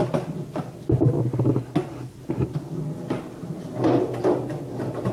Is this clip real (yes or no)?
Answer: yes